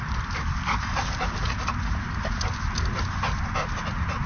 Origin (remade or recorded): recorded